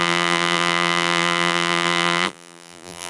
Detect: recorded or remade remade